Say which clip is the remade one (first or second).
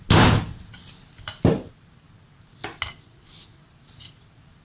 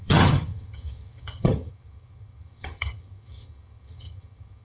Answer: second